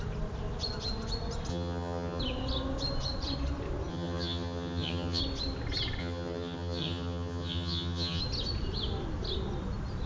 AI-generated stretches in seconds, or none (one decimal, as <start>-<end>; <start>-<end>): 1.5-2.2; 3.9-5.2; 6.0-8.2